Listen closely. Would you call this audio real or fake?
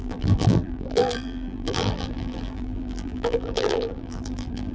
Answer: fake